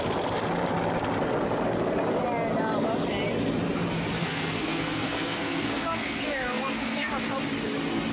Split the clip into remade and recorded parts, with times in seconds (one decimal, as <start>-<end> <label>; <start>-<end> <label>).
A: 0.0-4.2 recorded; 4.2-7.1 remade; 7.1-8.1 recorded